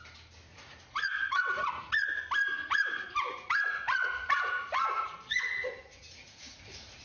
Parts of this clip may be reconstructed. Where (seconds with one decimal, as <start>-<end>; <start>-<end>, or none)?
0.5-2.1; 2.5-7.0